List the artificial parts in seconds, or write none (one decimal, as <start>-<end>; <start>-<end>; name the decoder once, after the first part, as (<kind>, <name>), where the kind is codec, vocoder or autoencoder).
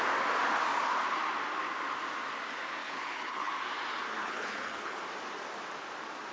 2.8-3.5 (codec, HILCodec); 4.2-5.0